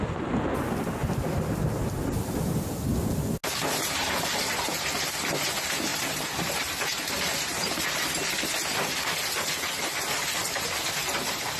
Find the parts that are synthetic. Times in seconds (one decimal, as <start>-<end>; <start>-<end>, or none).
1.0-2.5; 5.9-6.5; 9.9-10.6; 11.0-11.6

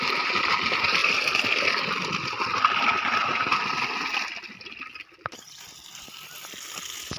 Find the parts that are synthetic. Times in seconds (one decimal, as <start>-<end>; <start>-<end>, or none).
3.3-6.6